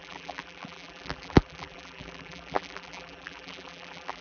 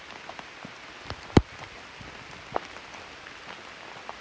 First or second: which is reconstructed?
first